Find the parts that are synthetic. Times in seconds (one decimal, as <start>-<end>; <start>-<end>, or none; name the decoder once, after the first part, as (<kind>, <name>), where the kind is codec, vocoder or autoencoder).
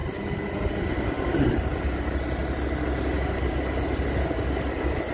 none